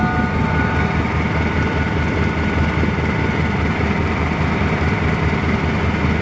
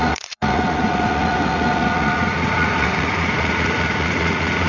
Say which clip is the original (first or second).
first